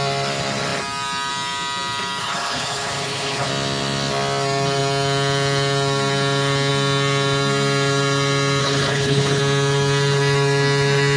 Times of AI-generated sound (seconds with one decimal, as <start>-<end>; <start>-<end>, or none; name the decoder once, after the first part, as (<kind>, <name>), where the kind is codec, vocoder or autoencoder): 2.2-3.5 (codec, HILCodec); 8.6-9.4